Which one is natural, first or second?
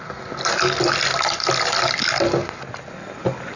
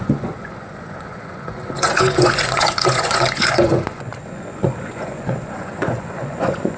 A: first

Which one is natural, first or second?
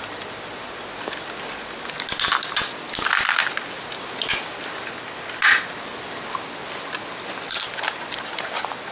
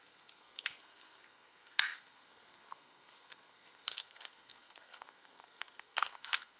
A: first